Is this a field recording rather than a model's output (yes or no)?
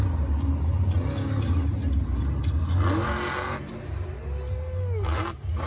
yes